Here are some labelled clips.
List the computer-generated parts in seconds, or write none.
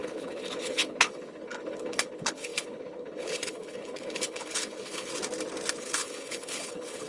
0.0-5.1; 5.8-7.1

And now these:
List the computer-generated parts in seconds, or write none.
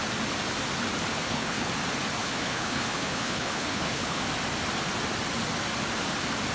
1.1-1.7; 2.2-4.2